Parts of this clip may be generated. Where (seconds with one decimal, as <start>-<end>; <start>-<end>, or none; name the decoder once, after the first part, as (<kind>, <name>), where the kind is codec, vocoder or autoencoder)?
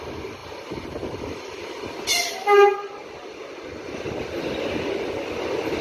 0.4-1.8 (vocoder, BigVGAN v2)